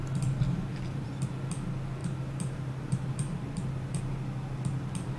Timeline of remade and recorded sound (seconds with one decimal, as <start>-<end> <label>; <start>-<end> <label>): 0.0-0.7 recorded; 0.7-1.3 remade; 1.3-2.0 recorded; 2.0-4.0 remade; 4.0-5.2 recorded

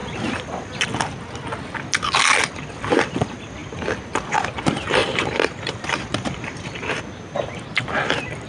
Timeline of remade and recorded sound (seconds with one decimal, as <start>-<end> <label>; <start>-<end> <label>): 0.0-5.0 recorded; 5.0-7.0 remade; 7.0-8.5 recorded

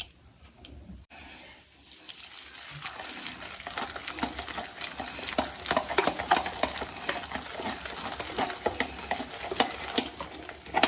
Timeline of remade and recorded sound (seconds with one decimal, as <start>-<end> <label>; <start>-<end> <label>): 0.0-1.2 remade; 1.2-10.9 recorded

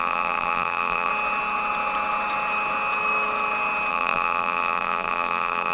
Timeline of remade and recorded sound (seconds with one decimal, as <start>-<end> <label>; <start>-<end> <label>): 0.0-1.1 remade; 1.1-3.9 recorded; 3.9-5.7 remade

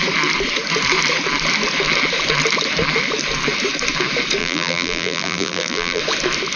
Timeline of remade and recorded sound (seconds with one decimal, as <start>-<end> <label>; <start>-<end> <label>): 0.0-4.4 recorded; 4.4-6.0 remade; 6.0-6.6 recorded

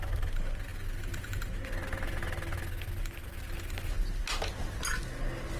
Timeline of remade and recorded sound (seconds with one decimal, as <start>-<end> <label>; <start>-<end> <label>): 0.0-5.6 recorded